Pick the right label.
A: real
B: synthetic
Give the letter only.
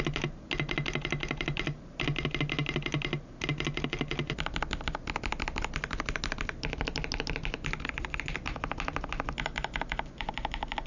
A